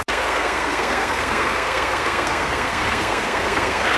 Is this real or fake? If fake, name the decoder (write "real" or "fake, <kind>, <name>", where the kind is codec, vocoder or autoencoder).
fake, codec, SNAC